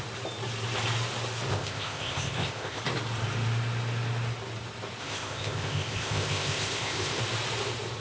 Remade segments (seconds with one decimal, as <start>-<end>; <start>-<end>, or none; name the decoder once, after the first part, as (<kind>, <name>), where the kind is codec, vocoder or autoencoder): 1.5-2.8 (codec, ZipCodec); 5.0-7.2